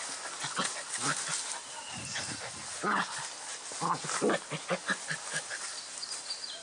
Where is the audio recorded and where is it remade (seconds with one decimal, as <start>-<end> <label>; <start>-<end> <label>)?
0.0-6.6 recorded